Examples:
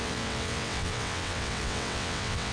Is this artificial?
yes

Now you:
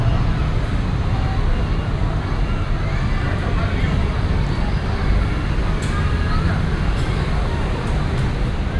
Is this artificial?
no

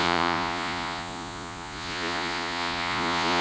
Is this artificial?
yes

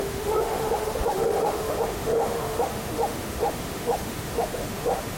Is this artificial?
yes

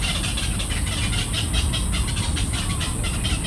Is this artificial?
no